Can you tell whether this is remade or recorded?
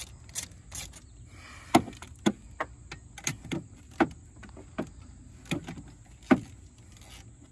recorded